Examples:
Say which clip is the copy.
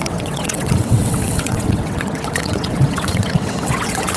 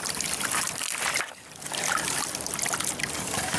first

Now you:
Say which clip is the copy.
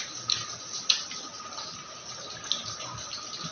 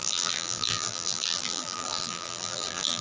second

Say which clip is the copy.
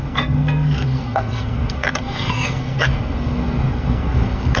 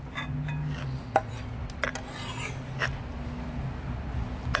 first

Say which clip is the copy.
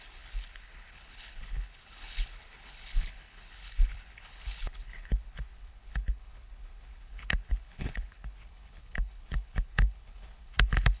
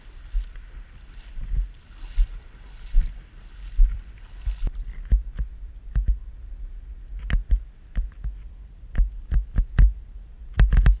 first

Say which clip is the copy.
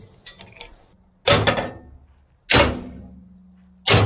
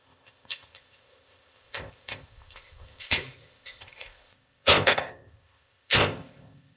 second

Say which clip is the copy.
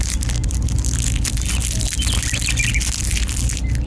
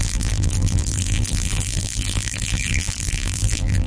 second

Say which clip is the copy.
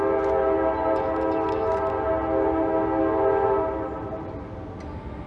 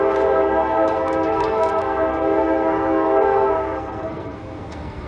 second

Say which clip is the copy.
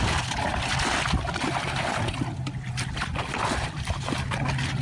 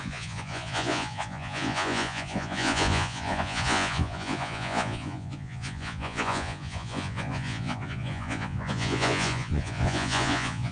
second